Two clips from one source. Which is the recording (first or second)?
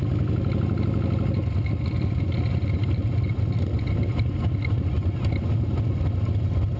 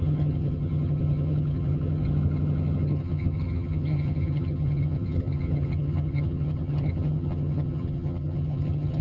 first